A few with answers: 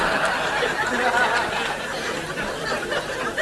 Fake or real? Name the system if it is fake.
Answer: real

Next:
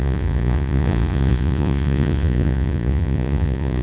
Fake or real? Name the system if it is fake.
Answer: fake, vocoder, Vocos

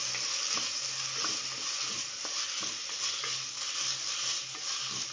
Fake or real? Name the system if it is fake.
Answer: real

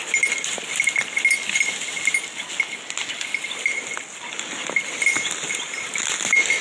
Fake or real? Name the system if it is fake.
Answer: real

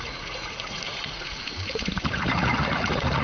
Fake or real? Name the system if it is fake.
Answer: fake, vocoder, Vocos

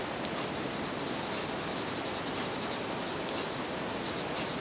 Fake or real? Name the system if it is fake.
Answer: real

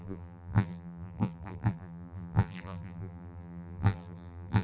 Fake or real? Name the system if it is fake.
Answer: fake, vocoder, BigVGAN v2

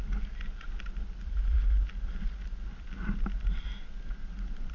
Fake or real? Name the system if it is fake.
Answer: real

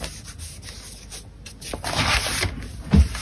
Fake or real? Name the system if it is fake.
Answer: real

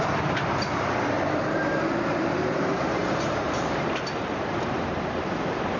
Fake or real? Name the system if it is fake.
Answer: fake, vocoder, BigVGAN v2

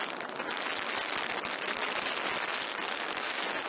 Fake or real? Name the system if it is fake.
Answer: real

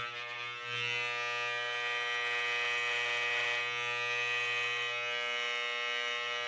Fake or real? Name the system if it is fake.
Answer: real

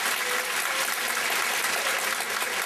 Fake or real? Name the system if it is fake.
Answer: real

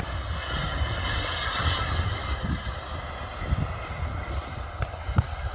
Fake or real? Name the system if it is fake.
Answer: real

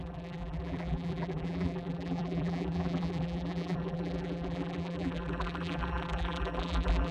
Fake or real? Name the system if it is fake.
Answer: fake, vocoder, BigVGAN v2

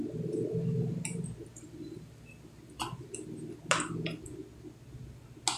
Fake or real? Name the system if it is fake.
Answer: real